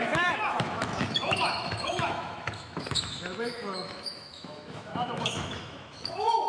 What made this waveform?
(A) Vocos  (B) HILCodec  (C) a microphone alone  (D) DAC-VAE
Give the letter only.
D